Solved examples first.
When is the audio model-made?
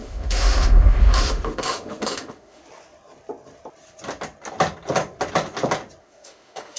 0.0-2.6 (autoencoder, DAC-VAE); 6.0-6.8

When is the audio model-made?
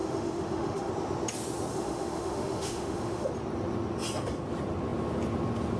0.0-0.9 (autoencoder, DAC-VAE); 1.7-3.3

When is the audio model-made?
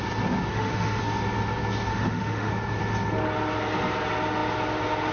0.5-1.0 (autoencoder, DAC-VAE); 1.9-2.5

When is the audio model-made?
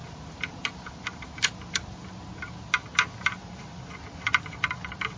none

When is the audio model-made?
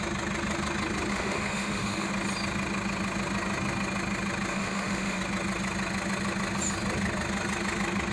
1.1-2.1 (autoencoder, DAC-VAE); 4.5-5.2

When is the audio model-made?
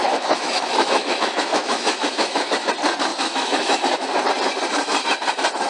0.0-2.7 (autoencoder, DAC-VAE); 3.1-3.8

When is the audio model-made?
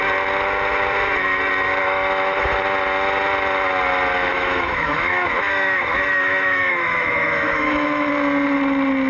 1.8-2.6 (autoencoder, DAC-VAE); 4.3-8.1